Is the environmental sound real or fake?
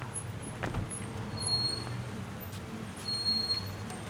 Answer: real